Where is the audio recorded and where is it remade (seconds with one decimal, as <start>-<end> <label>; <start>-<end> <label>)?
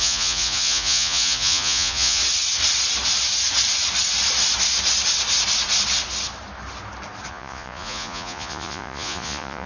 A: 0.0-2.2 remade; 2.2-7.3 recorded; 7.3-9.7 remade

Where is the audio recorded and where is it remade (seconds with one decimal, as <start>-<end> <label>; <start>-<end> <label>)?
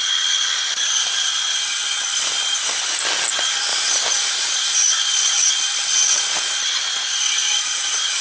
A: 0.0-3.7 recorded; 3.7-5.5 remade; 5.5-7.4 recorded; 7.4-8.2 remade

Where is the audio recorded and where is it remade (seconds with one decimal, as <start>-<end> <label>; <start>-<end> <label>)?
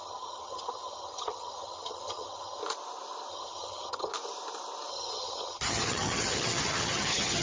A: 0.0-2.6 remade; 2.6-3.3 recorded; 3.3-4.1 remade; 4.1-4.9 recorded; 4.9-7.4 remade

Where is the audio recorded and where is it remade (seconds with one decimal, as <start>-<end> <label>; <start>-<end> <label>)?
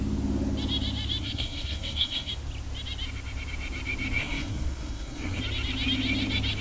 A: 0.0-1.2 recorded; 1.2-2.3 remade; 2.3-4.2 recorded; 4.2-5.4 remade; 5.4-6.6 recorded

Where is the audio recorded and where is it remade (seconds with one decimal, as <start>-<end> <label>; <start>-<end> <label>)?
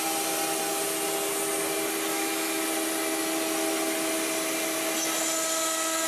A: 0.0-2.1 recorded; 2.1-2.6 remade; 2.6-6.1 recorded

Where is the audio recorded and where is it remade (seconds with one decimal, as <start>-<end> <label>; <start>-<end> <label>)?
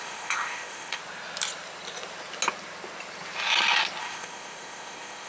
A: 0.0-1.0 remade; 1.0-4.0 recorded; 4.0-5.3 remade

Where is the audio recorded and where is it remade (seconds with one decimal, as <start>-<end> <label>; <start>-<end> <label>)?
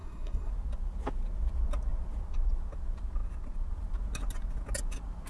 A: 0.0-0.5 remade; 0.5-5.3 recorded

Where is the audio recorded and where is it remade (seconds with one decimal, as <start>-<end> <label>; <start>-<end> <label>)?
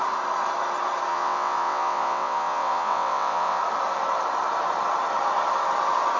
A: 0.0-1.1 recorded; 1.1-3.6 remade; 3.6-6.2 recorded